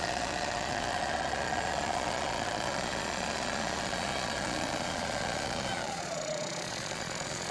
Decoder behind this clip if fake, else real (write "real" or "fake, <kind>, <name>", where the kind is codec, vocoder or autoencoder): fake, vocoder, Vocos